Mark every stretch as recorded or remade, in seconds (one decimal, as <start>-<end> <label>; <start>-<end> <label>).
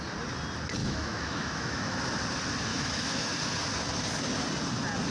0.0-0.8 recorded; 0.8-2.0 remade; 2.0-2.7 recorded; 2.7-3.3 remade; 3.3-5.1 recorded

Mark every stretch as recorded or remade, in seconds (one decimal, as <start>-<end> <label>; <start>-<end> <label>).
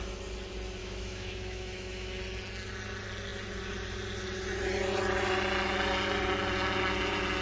0.0-0.8 recorded; 0.8-2.2 remade; 2.2-7.4 recorded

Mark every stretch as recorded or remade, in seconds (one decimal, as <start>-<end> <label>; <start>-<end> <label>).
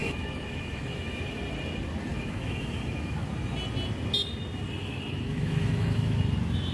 0.0-1.4 remade; 1.4-2.1 recorded; 2.1-3.3 remade; 3.3-4.8 recorded; 4.8-6.2 remade; 6.2-6.7 recorded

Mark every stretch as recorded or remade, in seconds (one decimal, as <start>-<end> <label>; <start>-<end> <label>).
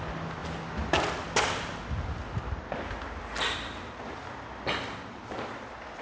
0.0-6.0 recorded